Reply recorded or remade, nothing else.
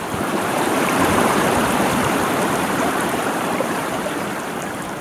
remade